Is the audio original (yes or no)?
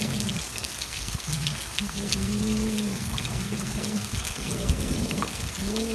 no